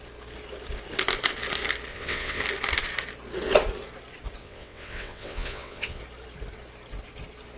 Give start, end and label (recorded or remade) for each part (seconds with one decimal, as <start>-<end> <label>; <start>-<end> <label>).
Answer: 0.0-1.9 recorded; 1.9-2.4 remade; 2.4-4.4 recorded; 4.4-6.0 remade; 6.0-7.6 recorded